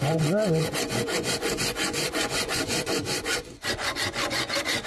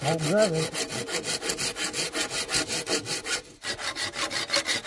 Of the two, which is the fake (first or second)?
first